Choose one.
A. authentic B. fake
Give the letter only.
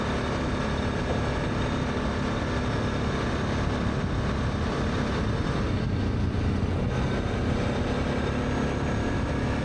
A